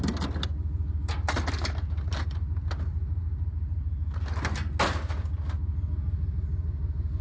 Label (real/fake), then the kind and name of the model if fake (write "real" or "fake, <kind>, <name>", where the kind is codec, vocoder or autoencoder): real